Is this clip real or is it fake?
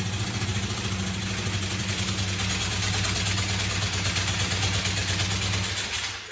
real